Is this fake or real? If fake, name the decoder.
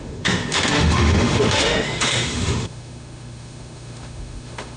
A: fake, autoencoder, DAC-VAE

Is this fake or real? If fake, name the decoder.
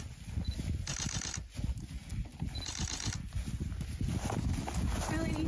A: real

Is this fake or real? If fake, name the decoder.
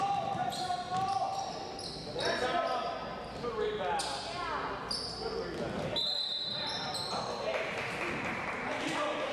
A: real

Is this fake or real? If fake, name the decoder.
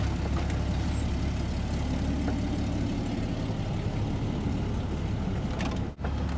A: real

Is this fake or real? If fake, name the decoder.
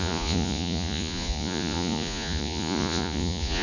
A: fake, vocoder, Vocos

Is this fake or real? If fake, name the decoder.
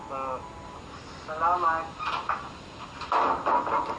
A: real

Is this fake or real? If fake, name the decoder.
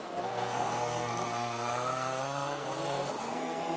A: fake, codec, SNAC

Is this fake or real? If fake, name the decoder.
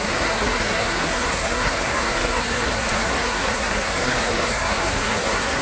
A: fake, codec, SNAC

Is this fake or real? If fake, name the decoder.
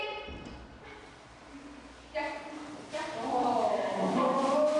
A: real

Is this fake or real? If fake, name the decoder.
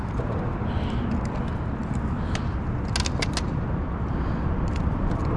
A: real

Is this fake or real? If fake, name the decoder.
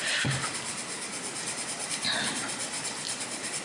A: fake, vocoder, BigVGAN v2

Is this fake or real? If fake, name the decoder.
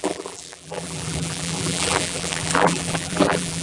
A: fake, vocoder, BigVGAN v2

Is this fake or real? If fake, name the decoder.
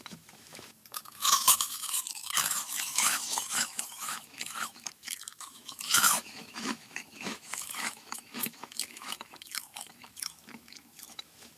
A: fake, autoencoder, DAC-VAE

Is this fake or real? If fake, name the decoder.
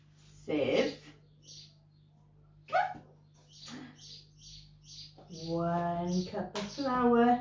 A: real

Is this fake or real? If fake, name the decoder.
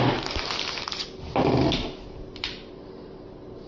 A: real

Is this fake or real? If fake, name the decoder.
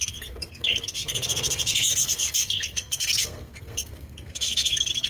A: fake, codec, SNAC